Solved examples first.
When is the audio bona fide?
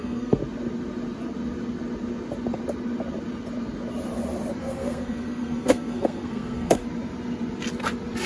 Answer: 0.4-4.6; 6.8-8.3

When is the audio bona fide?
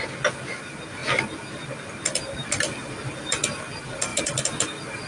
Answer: 0.0-5.1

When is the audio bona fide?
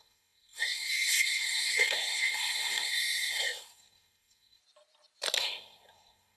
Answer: 4.6-5.4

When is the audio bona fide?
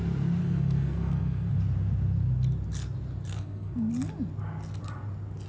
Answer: 0.0-0.4; 1.5-3.3; 3.9-5.5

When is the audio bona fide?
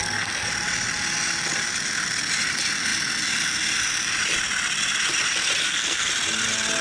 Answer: 0.5-5.6; 6.1-6.8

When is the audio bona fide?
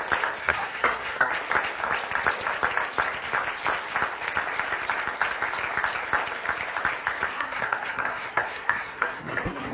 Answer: 0.0-0.4; 1.3-7.3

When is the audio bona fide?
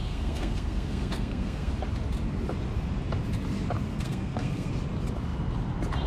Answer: 1.7-3.9; 4.7-6.1